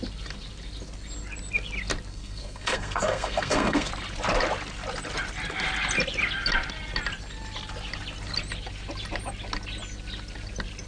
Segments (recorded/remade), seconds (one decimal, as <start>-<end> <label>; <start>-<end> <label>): 0.0-2.1 recorded; 2.1-3.9 remade; 3.9-10.9 recorded